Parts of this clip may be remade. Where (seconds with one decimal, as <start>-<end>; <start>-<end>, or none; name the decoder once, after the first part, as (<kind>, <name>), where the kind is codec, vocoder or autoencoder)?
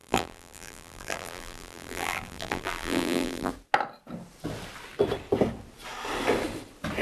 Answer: 0.0-3.5 (vocoder, BigVGAN v2)